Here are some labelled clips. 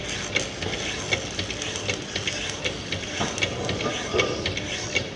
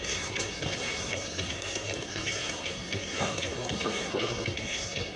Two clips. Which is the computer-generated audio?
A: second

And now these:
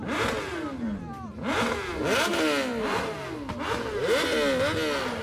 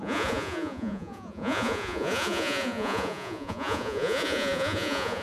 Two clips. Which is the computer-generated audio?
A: second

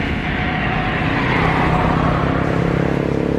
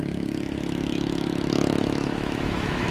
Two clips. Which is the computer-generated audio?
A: second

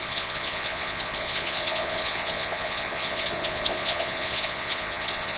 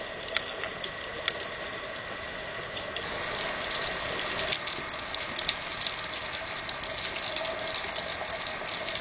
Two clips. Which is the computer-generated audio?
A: first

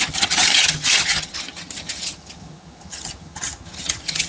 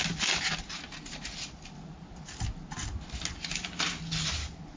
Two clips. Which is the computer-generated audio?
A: first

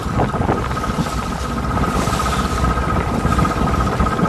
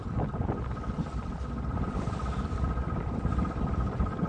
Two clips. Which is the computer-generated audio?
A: second